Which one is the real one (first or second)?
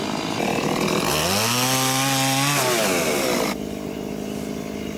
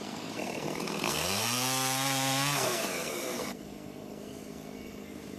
first